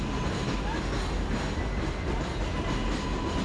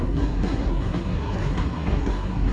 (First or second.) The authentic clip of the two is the first